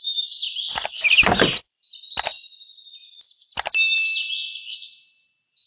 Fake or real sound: real